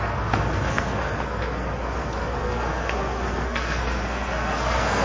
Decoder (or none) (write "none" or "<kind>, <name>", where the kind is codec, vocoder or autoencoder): codec, SNAC